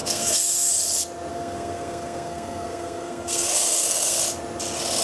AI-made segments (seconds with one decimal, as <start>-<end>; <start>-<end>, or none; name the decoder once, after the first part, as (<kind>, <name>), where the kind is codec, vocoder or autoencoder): 0.0-0.7 (codec, SNAC); 1.3-4.2